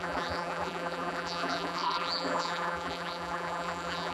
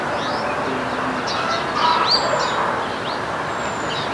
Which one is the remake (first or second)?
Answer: first